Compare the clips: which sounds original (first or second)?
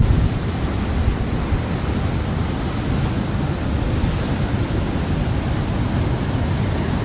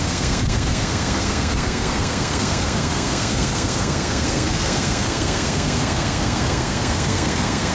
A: first